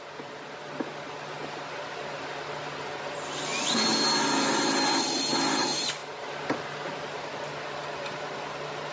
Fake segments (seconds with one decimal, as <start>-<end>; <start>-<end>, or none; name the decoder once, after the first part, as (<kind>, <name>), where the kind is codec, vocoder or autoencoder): none